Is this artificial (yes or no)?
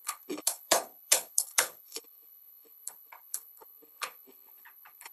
yes